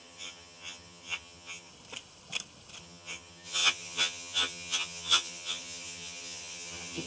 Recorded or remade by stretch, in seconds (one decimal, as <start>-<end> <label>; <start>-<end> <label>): 0.0-1.7 remade; 1.7-2.8 recorded; 2.8-7.1 remade